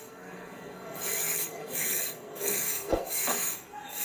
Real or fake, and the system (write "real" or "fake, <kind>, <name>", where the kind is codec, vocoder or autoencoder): fake, codec, SNAC